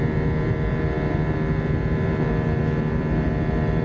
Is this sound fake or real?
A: fake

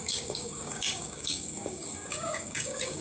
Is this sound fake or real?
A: fake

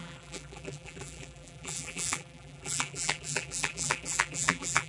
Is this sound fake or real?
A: fake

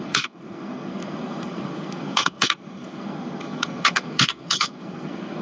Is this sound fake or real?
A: fake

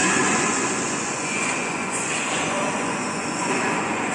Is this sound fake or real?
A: fake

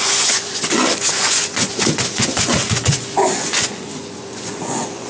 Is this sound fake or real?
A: fake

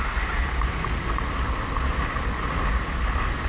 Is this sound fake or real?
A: real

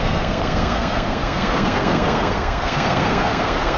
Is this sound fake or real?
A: fake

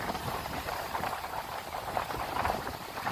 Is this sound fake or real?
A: fake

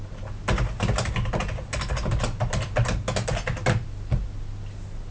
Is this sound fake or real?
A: real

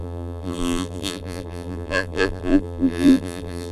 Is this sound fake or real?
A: fake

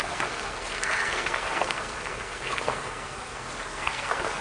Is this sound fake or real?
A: fake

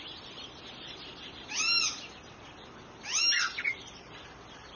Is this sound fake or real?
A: real